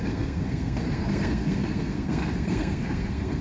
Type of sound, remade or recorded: remade